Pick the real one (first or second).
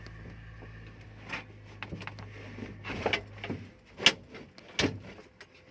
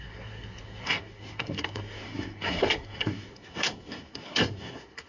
first